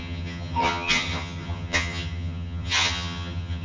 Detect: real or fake fake